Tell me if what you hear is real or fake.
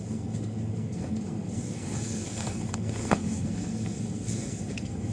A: fake